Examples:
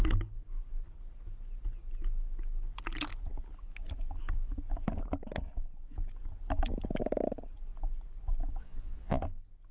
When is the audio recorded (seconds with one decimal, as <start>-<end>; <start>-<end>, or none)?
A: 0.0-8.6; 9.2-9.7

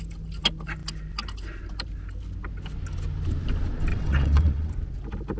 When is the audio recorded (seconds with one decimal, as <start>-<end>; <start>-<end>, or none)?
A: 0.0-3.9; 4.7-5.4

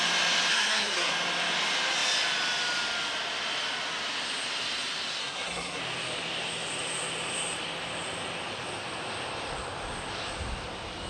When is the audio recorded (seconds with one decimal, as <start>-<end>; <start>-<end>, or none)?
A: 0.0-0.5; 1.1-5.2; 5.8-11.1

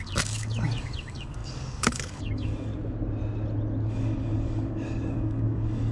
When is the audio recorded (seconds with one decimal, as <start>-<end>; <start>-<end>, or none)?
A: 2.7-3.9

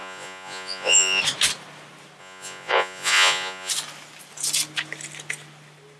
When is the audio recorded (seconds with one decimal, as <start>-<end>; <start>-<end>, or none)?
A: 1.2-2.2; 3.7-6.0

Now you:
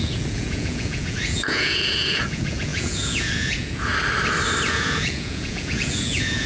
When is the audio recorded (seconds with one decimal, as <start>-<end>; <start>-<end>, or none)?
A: 3.9-4.7

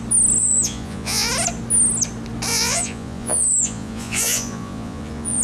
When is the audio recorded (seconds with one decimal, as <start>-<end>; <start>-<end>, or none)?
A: 0.0-0.4; 1.3-2.5